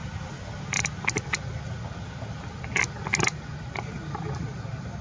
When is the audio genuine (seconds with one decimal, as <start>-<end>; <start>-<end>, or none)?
0.0-5.0